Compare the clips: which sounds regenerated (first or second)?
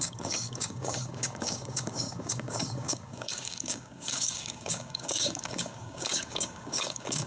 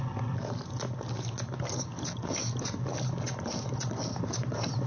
first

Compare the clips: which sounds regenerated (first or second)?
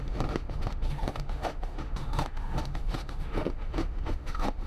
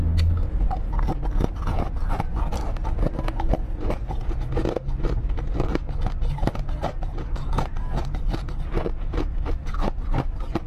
first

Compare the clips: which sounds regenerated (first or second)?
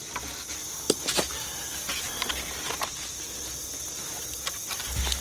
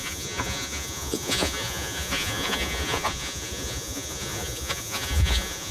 second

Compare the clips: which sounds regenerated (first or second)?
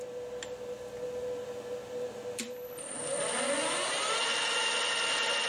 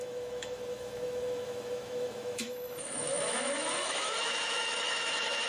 second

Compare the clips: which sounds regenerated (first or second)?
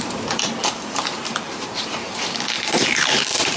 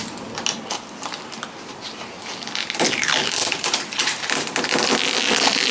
first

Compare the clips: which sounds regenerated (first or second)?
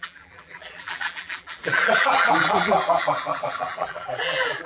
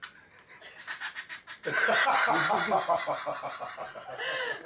first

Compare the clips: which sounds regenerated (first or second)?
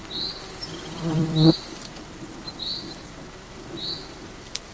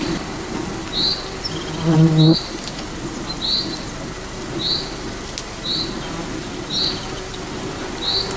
first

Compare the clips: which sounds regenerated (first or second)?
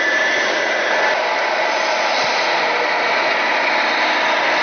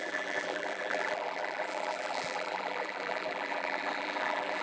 second